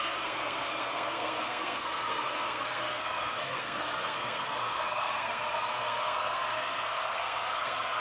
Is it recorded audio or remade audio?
remade